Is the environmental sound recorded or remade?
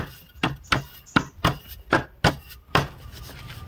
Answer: recorded